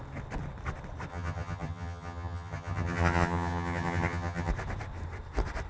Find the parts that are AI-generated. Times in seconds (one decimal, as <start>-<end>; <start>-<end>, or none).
1.1-4.5